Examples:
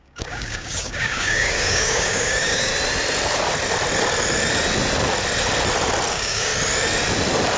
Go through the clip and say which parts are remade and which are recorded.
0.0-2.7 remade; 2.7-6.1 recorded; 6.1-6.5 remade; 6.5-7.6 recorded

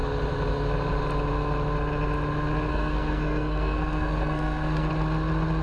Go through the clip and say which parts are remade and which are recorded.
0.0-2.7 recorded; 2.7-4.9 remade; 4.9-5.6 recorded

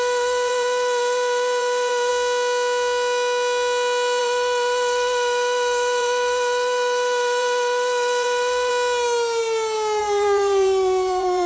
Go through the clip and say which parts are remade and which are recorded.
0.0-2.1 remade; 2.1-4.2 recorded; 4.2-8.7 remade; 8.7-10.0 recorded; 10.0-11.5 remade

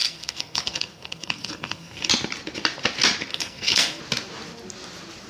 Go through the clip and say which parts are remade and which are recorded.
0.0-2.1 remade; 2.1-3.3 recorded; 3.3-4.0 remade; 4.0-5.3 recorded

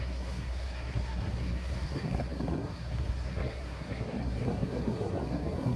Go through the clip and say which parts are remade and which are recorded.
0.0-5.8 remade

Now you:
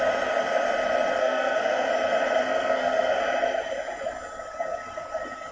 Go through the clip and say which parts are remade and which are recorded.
0.0-1.2 recorded; 1.2-1.9 remade; 1.9-2.4 recorded; 2.4-3.2 remade; 3.2-5.5 recorded

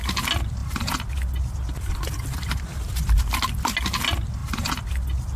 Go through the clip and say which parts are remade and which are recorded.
0.0-5.4 recorded

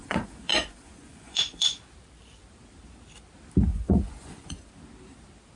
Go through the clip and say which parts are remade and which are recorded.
0.0-1.8 remade; 1.8-3.7 recorded; 3.7-4.7 remade; 4.7-5.6 recorded